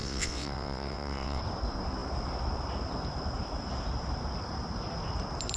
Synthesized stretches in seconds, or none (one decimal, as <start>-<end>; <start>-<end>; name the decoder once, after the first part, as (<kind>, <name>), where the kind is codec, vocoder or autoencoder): 0.0-1.4 (vocoder, WaveNeXt)